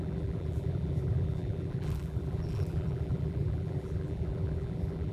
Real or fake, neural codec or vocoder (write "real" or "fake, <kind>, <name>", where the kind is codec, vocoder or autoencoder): fake, vocoder, BigVGAN v2